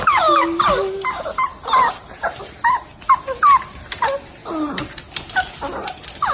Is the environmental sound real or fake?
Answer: real